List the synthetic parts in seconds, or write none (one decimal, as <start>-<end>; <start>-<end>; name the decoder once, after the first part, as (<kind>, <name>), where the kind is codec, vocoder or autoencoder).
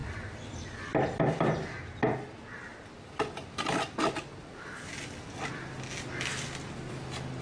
0.0-0.8 (vocoder, BigVGAN v2); 2.7-5.0